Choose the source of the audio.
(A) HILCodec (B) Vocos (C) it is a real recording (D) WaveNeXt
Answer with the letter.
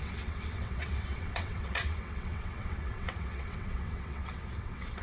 D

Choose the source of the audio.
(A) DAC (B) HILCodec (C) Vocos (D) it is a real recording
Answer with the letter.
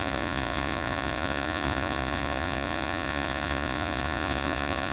C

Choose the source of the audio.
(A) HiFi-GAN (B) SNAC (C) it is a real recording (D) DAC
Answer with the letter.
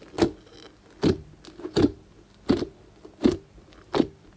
C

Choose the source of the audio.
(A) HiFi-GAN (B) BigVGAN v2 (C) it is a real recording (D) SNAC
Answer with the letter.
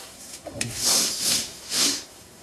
D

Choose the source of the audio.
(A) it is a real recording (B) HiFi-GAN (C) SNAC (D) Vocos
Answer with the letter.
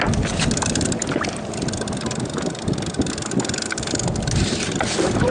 A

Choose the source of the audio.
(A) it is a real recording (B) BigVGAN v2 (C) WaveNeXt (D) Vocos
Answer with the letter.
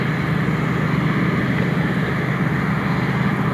A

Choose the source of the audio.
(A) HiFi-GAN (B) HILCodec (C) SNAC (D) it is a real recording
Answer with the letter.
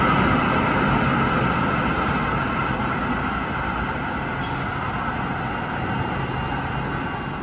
D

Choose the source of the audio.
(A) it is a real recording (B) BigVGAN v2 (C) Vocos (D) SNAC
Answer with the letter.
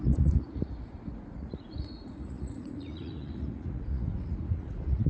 C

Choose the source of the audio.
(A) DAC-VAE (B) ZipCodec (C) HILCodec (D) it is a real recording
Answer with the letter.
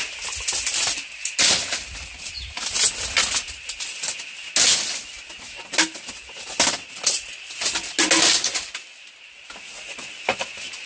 D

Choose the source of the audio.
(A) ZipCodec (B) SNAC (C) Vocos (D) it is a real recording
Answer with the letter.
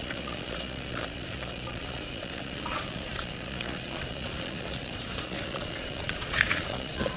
C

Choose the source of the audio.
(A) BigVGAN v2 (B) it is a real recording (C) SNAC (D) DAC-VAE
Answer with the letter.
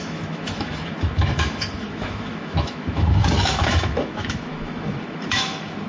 D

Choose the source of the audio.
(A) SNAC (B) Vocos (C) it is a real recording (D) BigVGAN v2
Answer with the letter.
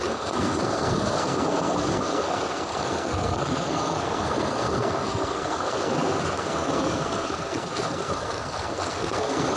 A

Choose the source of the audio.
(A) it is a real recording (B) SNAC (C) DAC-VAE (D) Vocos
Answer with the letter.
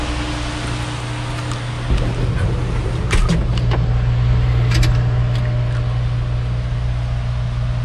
A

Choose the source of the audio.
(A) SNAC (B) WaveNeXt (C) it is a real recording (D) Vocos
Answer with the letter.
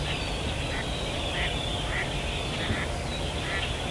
C